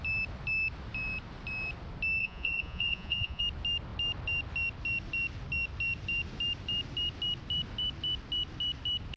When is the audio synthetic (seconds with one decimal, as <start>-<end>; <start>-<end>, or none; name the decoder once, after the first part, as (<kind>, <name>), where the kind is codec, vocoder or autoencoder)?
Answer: 2.2-3.4 (vocoder, Vocos)